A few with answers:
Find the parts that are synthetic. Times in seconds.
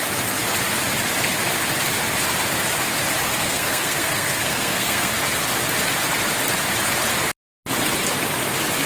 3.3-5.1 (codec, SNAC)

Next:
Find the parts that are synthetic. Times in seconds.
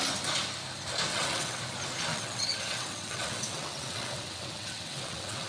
1.1-1.6 (vocoder, WaveNeXt); 2.1-5.5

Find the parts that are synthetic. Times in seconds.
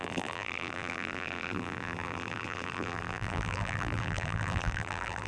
0.0-5.3 (vocoder, BigVGAN v2)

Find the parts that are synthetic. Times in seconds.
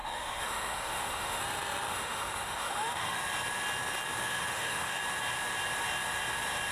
0.0-1.4 (autoencoder, DAC-VAE); 1.9-3.2; 4.2-5.0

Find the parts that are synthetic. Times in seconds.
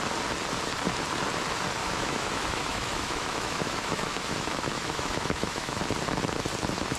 1.8-5.8 (autoencoder, DAC-VAE)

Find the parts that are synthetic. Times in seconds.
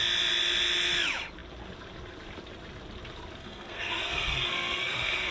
3.4-5.3 (codec, SNAC)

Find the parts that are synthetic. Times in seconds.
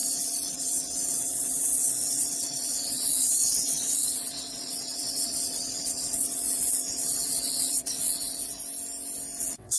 0.0-8.6 (vocoder, WaveNeXt); 9.4-9.8